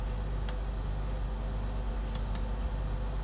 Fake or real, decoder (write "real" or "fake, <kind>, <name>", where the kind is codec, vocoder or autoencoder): real